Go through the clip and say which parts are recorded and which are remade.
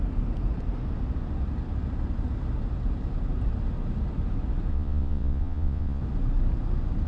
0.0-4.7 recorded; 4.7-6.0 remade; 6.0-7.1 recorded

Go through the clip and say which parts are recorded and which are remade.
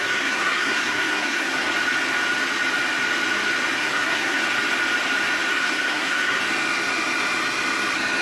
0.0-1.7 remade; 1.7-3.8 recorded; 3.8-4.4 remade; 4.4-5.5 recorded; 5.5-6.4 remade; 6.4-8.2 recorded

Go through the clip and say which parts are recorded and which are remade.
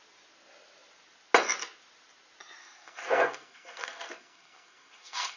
0.0-2.6 recorded; 2.6-5.4 remade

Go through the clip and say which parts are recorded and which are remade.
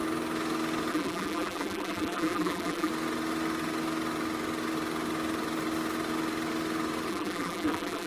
0.0-0.9 recorded; 0.9-2.9 remade; 2.9-7.1 recorded; 7.1-8.1 remade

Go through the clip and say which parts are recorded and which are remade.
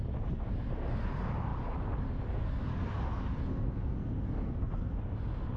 0.0-3.5 recorded; 3.5-4.7 remade; 4.7-5.6 recorded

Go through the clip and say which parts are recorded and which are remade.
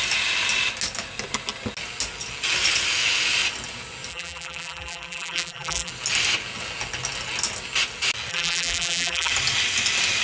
0.0-4.1 recorded; 4.1-5.9 remade; 5.9-8.3 recorded; 8.3-9.3 remade; 9.3-10.2 recorded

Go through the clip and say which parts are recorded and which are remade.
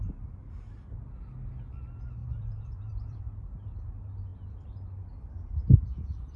0.0-0.5 remade; 0.5-2.2 recorded; 2.2-3.2 remade; 3.2-6.4 recorded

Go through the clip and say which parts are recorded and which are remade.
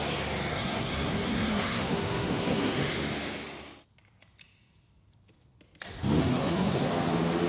0.0-0.5 recorded; 0.5-2.9 remade; 2.9-6.2 recorded; 6.2-6.9 remade; 6.9-7.5 recorded